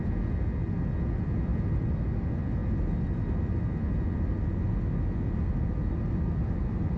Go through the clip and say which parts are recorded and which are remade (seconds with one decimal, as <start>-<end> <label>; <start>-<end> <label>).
0.0-7.0 recorded